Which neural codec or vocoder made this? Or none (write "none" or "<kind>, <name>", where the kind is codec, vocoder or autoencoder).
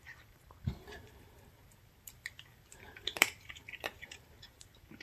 vocoder, BigVGAN v2